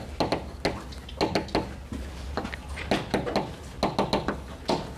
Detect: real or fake real